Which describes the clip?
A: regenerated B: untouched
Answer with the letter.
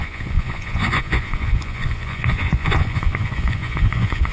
A